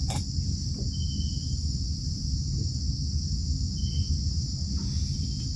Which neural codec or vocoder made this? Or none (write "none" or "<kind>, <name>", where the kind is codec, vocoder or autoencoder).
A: none